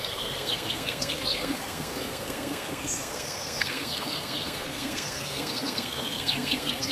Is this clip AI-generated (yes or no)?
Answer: yes